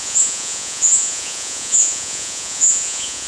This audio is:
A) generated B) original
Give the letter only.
A